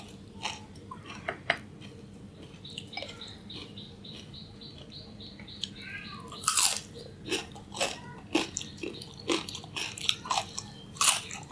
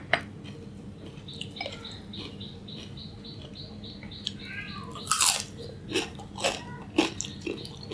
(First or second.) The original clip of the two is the second